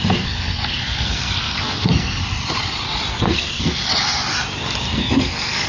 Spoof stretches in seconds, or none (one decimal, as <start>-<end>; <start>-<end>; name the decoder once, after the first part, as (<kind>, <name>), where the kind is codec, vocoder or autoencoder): 0.0-2.2 (codec, SNAC); 3.1-3.8; 4.9-5.7